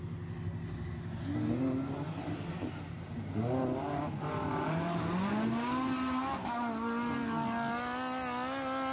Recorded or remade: recorded